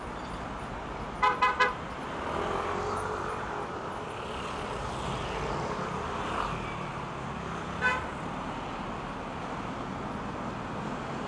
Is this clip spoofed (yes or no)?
no